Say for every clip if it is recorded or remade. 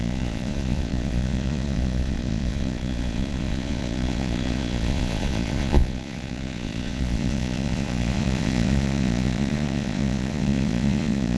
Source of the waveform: remade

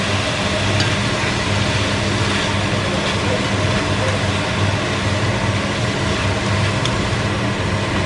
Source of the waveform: recorded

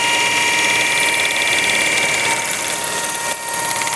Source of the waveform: recorded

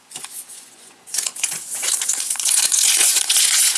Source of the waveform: remade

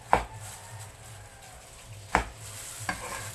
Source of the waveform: recorded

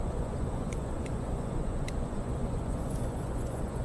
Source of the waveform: remade